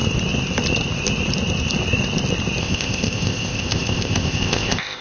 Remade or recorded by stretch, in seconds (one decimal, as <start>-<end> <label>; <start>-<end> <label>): 0.0-2.6 recorded; 2.6-5.0 remade